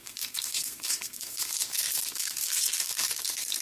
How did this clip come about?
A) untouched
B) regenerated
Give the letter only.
B